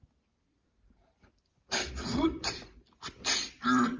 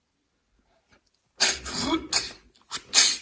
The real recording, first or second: second